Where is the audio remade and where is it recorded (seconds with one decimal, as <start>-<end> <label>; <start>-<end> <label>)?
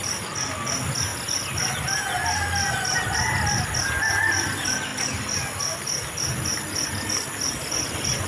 0.0-8.3 recorded